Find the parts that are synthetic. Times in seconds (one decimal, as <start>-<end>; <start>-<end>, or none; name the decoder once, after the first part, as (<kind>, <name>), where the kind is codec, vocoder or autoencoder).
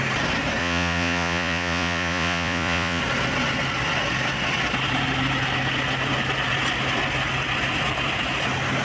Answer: 0.6-3.0 (vocoder, Vocos)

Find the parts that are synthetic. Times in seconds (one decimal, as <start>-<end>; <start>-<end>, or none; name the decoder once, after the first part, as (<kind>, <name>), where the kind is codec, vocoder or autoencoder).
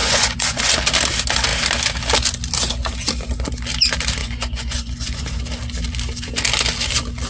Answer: 0.0-0.6 (vocoder, Vocos); 4.2-5.4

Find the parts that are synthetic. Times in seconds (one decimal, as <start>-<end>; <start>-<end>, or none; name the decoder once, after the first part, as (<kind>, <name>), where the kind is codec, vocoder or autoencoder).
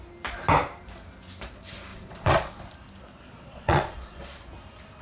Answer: 1.9-2.5 (vocoder, Vocos); 3.1-4.4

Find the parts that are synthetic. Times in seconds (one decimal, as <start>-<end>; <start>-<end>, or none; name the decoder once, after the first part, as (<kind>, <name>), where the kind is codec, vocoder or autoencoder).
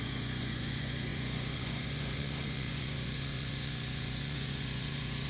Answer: 0.0-5.3 (vocoder, Vocos)